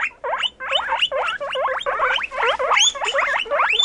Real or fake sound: real